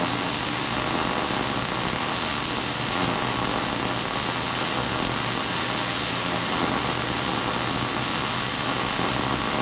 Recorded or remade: recorded